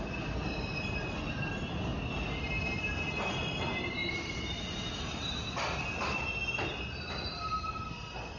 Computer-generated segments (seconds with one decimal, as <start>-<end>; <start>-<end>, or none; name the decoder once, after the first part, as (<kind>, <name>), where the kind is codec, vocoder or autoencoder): 4.0-5.7 (vocoder, BigVGAN v2)